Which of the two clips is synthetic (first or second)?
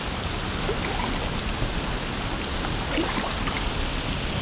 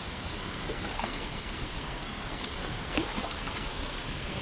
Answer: second